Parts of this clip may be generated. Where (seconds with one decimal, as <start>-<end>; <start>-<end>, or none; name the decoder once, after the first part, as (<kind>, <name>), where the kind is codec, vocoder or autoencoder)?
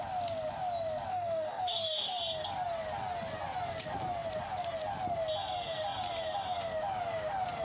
1.1-2.2 (codec, DAC)